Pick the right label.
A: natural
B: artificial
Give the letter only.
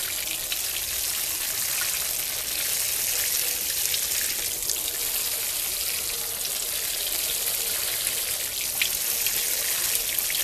A